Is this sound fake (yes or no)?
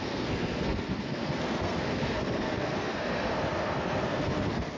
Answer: yes